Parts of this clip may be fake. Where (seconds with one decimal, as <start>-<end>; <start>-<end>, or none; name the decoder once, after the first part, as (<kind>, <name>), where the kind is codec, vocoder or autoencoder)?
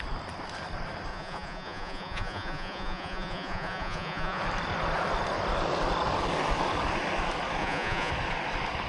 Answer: 1.1-4.4 (vocoder, Vocos); 7.6-8.1